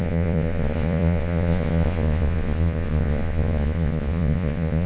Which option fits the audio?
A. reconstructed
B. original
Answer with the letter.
A